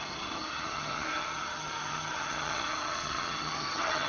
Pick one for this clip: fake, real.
fake